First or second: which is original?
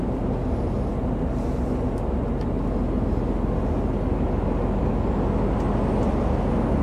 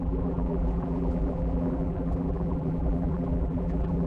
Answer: first